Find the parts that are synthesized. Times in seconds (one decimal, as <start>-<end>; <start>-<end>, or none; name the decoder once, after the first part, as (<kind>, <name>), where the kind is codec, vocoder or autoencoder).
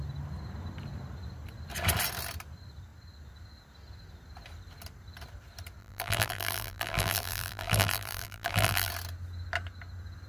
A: 5.8-8.9 (vocoder, BigVGAN v2)